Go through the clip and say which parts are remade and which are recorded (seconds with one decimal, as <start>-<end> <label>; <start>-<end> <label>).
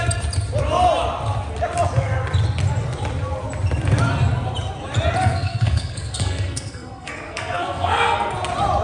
0.0-5.2 recorded; 5.2-8.3 remade; 8.3-8.8 recorded